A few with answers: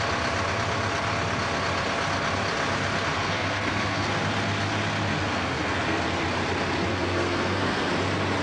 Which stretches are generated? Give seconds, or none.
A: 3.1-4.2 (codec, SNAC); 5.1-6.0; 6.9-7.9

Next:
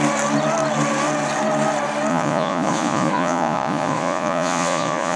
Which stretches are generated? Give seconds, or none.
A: 2.1-5.2 (vocoder, Vocos)

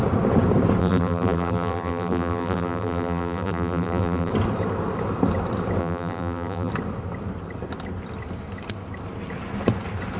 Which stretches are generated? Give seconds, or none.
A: 0.8-4.3 (vocoder, BigVGAN v2); 5.8-6.7

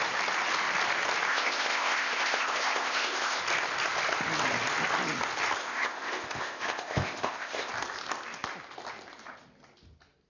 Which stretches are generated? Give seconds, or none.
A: 1.3-3.4 (codec, ZipCodec); 5.6-7.7

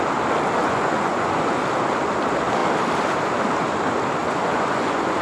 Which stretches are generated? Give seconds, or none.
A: 0.6-1.6 (vocoder, Vocos); 4.2-5.2

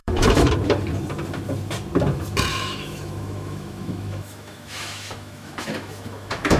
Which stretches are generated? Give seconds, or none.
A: 0.0-0.5 (autoencoder, DAC-VAE); 2.5-6.6

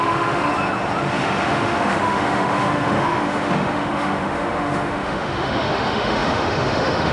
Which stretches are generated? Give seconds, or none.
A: 0.0-0.5 (autoencoder, DAC-VAE); 1.0-7.1